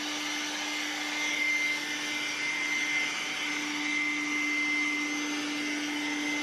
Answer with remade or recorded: recorded